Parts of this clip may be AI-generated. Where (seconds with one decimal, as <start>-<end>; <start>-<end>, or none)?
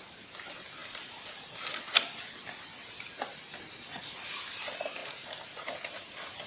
5.0-6.0